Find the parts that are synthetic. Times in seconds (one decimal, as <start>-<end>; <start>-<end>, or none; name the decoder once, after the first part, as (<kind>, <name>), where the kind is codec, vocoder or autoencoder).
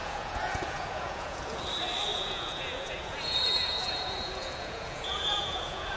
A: 0.0-1.6 (vocoder, Vocos); 2.1-6.0